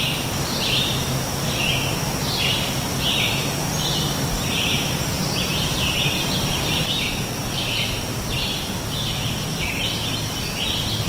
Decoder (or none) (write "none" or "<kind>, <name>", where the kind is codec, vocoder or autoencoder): none